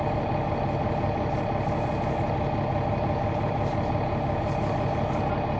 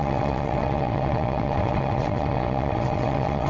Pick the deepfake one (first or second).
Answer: second